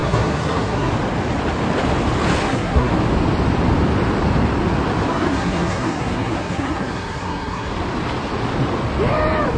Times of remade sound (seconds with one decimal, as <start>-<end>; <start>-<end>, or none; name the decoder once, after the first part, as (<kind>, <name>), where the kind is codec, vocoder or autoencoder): 0.0-0.9 (codec, SNAC); 2.4-2.9; 5.1-7.7

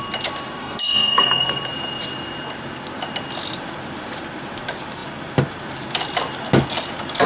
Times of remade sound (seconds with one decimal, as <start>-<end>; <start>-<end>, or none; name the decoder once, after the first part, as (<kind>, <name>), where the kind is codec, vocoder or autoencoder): 0.6-1.6 (codec, SNAC)

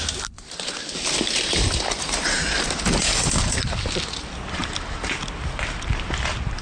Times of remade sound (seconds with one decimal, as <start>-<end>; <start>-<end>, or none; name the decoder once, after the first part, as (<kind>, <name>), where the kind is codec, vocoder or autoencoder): none